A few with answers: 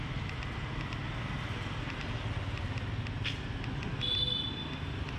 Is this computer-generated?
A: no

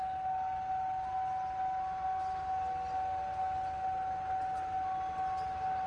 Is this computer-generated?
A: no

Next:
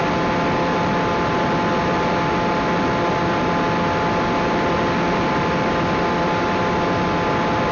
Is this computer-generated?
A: no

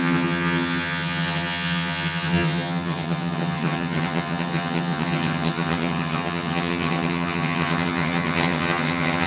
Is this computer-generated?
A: yes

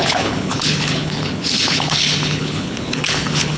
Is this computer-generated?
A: yes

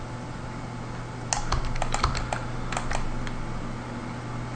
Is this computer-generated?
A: no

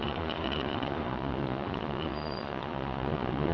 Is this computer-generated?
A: yes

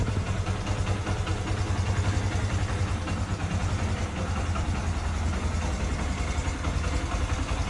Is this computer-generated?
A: no